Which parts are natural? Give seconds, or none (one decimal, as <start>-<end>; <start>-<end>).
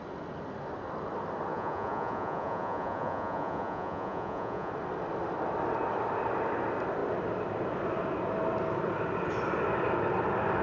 0.0-1.5; 4.7-10.6